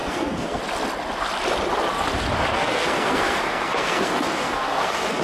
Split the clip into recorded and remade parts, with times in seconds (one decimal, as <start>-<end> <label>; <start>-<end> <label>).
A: 0.0-0.6 remade; 0.6-2.5 recorded; 2.5-5.2 remade